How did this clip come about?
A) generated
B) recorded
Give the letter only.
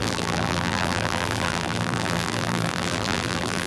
A